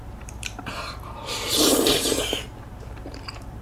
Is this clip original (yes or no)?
no